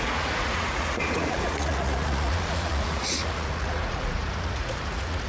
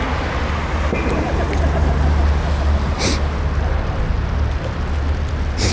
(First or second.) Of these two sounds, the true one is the second